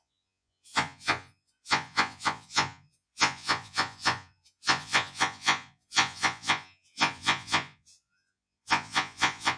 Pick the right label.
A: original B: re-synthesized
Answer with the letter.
B